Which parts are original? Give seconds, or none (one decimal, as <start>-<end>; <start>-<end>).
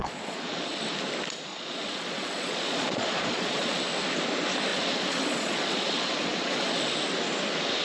0.8-1.5; 3.8-4.7; 6.9-7.8